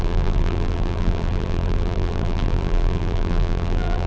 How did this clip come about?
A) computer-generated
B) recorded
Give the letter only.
A